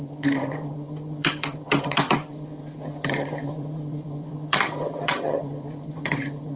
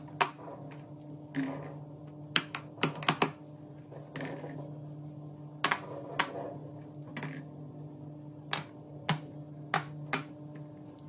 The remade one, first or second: first